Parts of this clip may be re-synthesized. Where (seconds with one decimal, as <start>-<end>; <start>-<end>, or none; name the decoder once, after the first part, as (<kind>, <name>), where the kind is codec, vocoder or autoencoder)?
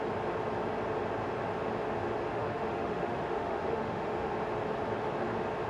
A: 2.3-4.3 (autoencoder, DAC-VAE)